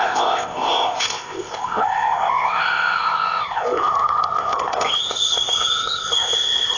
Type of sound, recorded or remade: remade